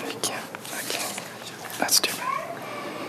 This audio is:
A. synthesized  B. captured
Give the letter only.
B